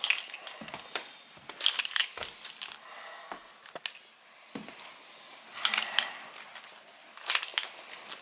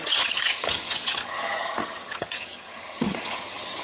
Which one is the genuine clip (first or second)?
first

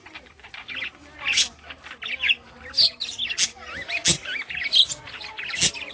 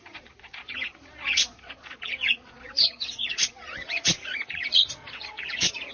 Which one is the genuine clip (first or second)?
first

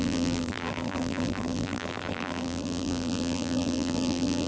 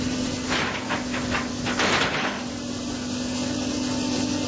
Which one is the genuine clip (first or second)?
second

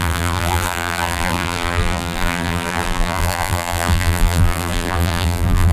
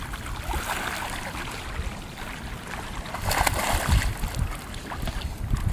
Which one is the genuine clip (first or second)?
second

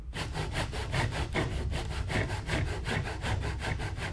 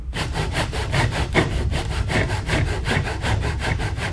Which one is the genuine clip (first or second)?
first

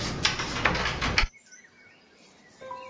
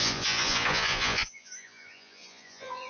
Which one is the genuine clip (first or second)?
first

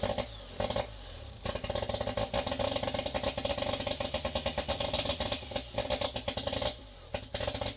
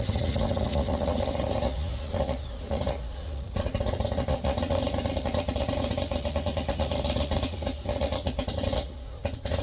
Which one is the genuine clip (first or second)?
first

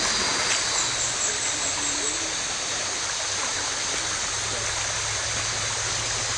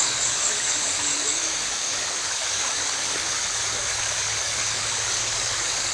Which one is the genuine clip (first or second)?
first